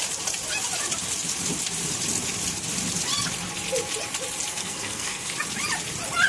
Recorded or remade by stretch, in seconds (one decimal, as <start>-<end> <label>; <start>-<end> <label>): 0.0-4.5 recorded; 4.5-5.3 remade; 5.3-6.3 recorded